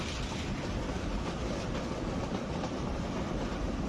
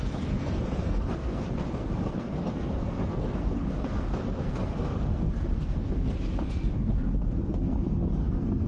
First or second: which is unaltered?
first